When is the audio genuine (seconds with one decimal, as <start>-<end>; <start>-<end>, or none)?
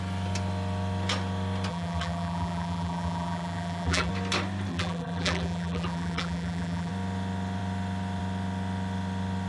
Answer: 0.0-1.7; 4.1-4.7; 6.9-9.5